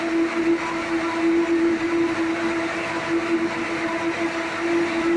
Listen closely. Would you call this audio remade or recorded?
recorded